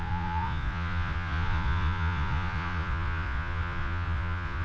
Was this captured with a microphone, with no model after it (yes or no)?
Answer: no